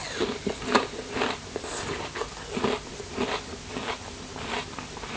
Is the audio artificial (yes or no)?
no